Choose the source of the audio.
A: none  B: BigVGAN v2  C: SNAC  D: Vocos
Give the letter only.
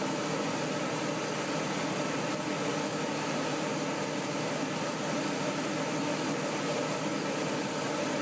A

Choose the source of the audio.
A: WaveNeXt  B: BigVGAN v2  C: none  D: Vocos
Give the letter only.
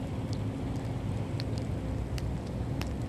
C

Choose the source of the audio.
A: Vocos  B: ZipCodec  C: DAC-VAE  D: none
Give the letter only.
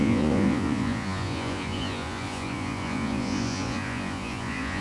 A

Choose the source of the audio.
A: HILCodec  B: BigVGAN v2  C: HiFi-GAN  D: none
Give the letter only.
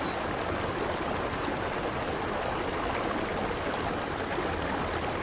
D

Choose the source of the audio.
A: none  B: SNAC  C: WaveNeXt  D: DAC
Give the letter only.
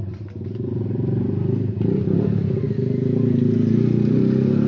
A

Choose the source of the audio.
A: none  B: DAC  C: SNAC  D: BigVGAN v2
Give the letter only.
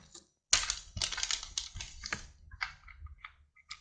A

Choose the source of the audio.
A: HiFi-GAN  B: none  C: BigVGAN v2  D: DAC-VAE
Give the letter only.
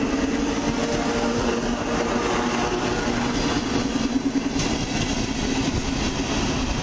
B